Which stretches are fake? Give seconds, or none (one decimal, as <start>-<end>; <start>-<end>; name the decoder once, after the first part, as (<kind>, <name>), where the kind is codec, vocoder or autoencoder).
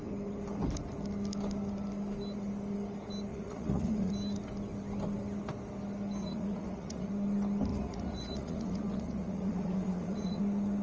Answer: 3.3-4.1 (vocoder, Vocos); 6.2-7.1; 7.7-10.4